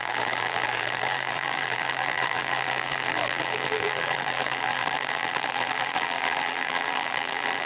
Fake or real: fake